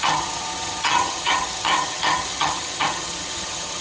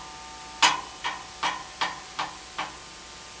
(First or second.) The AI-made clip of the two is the first